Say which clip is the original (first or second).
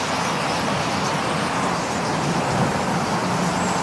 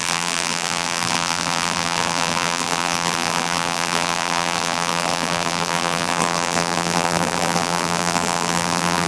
first